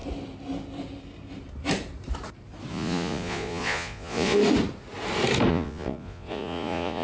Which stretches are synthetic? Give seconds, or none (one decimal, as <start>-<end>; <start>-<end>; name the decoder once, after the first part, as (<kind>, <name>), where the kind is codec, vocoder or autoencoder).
2.7-4.4 (vocoder, Vocos); 5.5-7.0

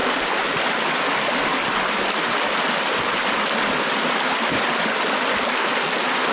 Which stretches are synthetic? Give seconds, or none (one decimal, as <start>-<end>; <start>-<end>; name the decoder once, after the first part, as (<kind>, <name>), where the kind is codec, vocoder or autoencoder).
none

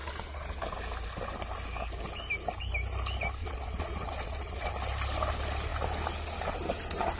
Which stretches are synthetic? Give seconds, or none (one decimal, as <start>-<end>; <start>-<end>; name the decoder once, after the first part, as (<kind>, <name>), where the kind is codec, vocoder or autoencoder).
0.0-0.6 (vocoder, Vocos); 3.4-4.7

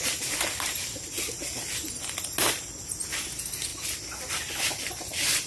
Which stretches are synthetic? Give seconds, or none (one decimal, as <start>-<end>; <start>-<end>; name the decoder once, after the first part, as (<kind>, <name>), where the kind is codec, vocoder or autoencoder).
none